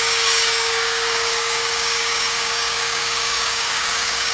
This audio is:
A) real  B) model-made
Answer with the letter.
B